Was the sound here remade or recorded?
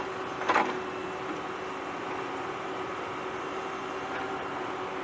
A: recorded